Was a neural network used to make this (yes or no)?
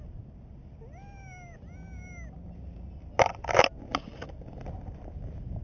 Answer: no